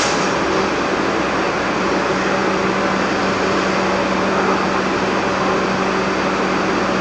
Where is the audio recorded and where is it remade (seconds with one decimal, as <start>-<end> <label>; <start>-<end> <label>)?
0.0-7.0 recorded